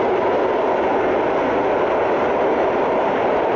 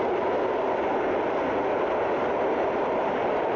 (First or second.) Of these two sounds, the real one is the first